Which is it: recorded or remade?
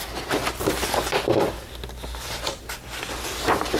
recorded